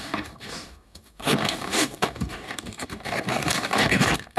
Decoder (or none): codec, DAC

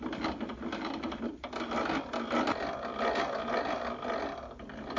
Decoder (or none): none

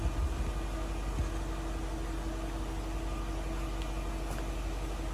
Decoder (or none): none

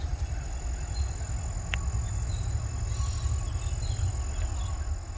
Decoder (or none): none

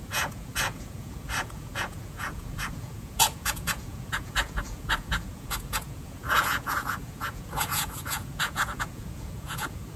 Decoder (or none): vocoder, Vocos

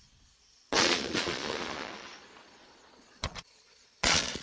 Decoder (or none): vocoder, Vocos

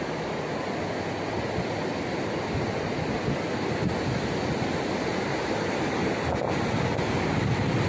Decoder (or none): none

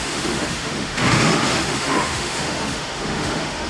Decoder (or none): autoencoder, DAC-VAE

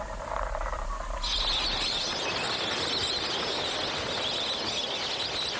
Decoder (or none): none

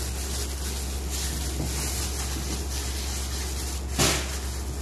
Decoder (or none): none